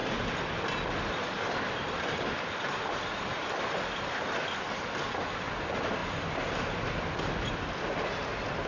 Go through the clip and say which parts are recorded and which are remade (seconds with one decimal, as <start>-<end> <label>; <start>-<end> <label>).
0.0-8.7 recorded